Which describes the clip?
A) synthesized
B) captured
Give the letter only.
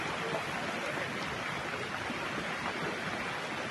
B